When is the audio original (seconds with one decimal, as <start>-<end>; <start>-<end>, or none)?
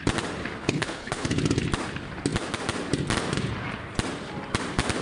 0.0-0.6; 1.4-5.0